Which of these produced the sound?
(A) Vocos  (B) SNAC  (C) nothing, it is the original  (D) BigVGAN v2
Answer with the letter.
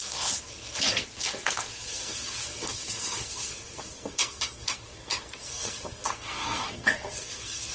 B